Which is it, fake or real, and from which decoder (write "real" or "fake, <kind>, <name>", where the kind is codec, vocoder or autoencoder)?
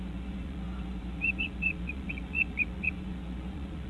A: fake, vocoder, Vocos